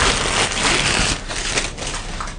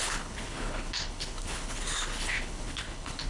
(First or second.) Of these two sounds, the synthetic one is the second